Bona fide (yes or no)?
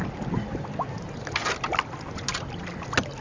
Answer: yes